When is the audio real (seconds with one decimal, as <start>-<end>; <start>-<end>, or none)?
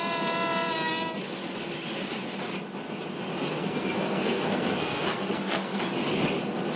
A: 0.0-3.6; 5.8-6.8